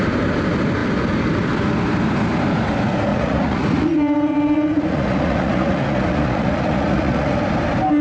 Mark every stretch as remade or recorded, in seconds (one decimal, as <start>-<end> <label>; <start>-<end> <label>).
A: 0.0-3.1 recorded; 3.1-7.4 remade; 7.4-8.0 recorded